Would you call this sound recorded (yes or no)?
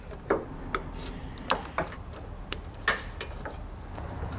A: yes